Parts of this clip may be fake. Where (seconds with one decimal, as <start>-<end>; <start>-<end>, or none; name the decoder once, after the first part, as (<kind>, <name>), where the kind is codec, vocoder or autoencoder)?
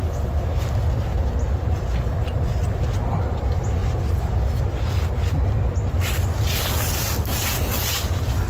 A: none